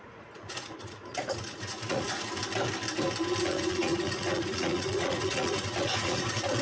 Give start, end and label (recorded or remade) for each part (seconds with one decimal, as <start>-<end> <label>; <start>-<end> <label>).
0.0-2.4 remade; 2.4-3.4 recorded; 3.4-6.6 remade